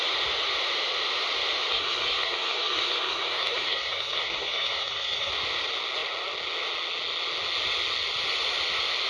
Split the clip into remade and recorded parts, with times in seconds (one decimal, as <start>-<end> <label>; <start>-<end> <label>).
0.0-1.7 recorded; 1.7-5.3 remade; 5.3-9.1 recorded

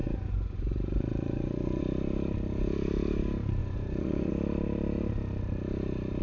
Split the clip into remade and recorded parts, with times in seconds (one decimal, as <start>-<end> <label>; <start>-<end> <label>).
0.0-1.8 remade; 1.8-3.6 recorded; 3.6-4.3 remade; 4.3-6.2 recorded

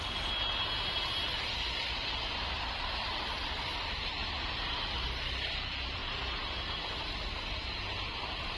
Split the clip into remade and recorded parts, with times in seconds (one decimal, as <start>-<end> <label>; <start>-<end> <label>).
0.0-8.6 recorded

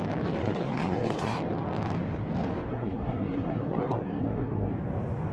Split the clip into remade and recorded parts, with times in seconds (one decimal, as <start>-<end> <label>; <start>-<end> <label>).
0.0-0.4 recorded; 0.4-1.4 remade; 1.4-2.7 recorded; 2.7-4.7 remade; 4.7-5.3 recorded

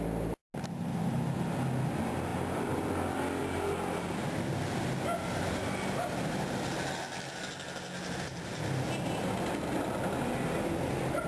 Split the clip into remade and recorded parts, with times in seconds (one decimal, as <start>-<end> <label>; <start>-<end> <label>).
0.0-11.3 recorded

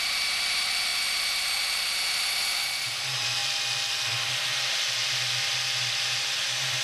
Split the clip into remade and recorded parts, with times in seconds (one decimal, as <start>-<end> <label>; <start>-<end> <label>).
0.0-3.4 remade; 3.4-6.0 recorded; 6.0-6.8 remade

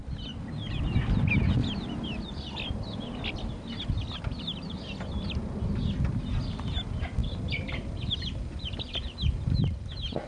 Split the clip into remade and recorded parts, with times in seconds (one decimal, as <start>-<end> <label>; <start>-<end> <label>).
0.0-10.3 recorded

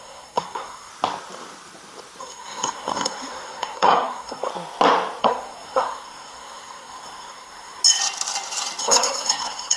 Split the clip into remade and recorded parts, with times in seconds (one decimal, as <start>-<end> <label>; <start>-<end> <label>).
0.0-0.9 remade; 0.9-2.2 recorded; 2.2-4.5 remade; 4.5-5.2 recorded; 5.2-7.8 remade; 7.8-8.8 recorded; 8.8-9.8 remade